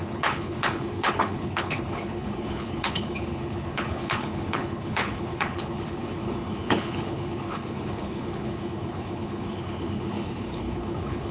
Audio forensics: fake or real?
fake